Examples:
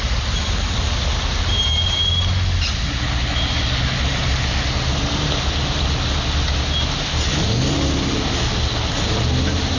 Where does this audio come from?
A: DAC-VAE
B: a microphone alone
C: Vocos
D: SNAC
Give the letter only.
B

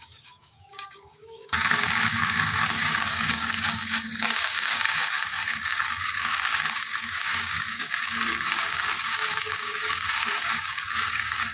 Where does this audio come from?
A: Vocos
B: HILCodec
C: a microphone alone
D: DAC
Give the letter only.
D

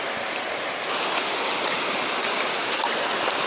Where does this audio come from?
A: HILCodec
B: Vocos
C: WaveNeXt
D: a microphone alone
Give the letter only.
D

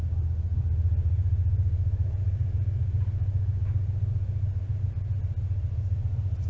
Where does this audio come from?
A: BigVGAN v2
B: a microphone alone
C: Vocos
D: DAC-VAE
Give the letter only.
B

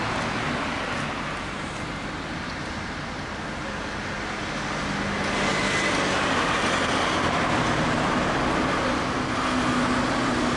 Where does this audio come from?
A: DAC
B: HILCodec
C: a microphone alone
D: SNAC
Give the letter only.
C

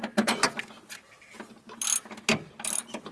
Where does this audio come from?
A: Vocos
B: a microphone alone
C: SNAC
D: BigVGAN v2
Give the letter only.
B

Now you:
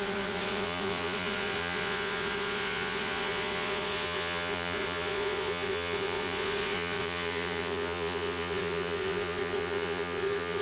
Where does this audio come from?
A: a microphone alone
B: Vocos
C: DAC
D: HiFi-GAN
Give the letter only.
B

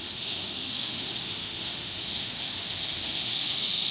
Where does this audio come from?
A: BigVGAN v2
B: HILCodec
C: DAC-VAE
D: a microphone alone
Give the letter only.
C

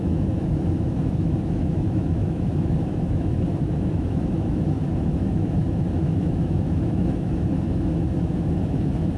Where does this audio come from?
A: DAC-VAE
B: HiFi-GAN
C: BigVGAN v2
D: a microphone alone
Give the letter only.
A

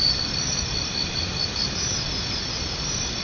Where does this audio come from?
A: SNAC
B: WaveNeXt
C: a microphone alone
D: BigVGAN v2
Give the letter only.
C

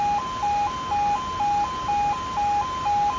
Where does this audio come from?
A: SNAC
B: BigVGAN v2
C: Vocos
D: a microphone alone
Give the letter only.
D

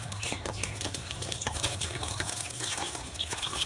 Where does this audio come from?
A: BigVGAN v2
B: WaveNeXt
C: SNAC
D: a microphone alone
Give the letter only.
C